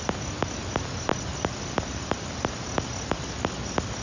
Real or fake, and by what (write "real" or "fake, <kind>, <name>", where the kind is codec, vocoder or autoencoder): real